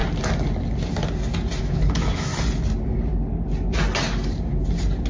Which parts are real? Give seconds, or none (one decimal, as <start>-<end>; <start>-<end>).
0.0-1.6; 2.3-5.1

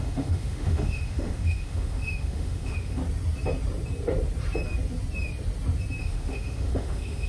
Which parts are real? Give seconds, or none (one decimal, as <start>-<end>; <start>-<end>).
3.0-6.0

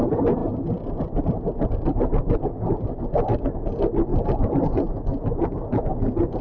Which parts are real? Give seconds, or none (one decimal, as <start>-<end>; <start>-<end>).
0.0-6.4